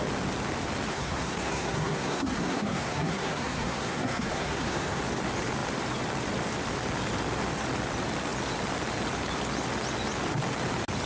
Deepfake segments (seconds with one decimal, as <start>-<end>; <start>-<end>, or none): 0.9-5.0